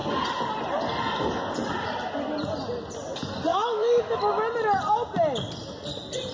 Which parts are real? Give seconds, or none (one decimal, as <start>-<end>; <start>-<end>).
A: 0.0-3.5; 4.2-6.3